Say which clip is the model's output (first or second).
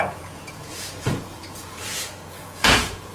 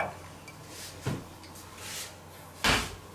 first